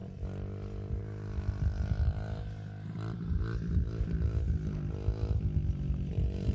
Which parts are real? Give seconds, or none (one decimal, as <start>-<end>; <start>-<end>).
0.0-6.5